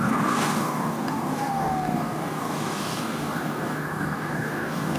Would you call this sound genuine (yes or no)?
no